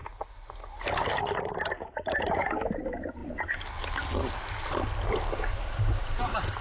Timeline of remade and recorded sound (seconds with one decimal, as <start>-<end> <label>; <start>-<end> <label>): 0.0-6.6 recorded